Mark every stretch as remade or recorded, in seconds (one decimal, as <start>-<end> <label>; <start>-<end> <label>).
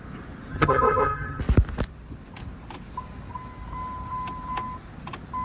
0.0-0.5 recorded; 0.5-1.4 remade; 1.4-5.4 recorded